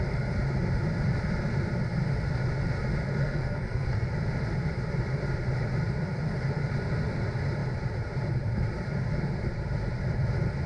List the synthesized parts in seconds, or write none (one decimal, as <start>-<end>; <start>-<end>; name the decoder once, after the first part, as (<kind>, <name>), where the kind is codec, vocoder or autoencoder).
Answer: 3.2-4.1 (codec, SNAC)